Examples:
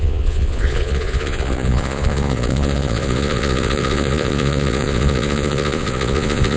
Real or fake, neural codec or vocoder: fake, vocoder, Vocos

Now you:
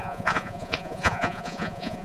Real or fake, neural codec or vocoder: fake, vocoder, Vocos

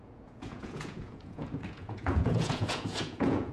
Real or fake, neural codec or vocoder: fake, vocoder, Vocos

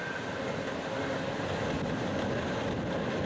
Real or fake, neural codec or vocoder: real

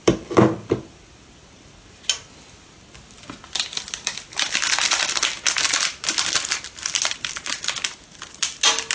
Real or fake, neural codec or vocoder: real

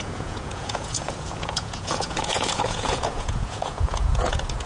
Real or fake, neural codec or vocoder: fake, vocoder, Vocos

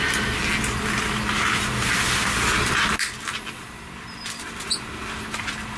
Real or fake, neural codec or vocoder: real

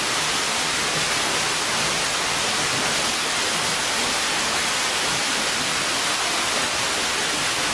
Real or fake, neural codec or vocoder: real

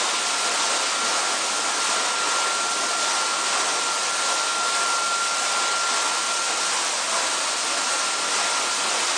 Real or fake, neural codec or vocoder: real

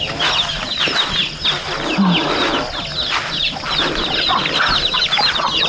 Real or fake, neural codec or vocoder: real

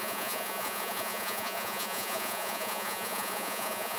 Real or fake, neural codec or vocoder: fake, vocoder, Vocos